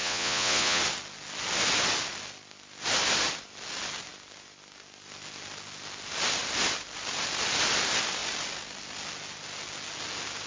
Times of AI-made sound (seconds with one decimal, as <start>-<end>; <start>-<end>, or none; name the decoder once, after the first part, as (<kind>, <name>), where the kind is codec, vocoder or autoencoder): 0.0-0.8 (vocoder, Vocos)